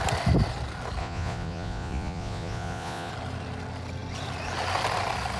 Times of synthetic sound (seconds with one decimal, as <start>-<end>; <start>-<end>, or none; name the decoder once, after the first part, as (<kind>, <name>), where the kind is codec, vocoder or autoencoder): 1.0-3.1 (vocoder, Vocos)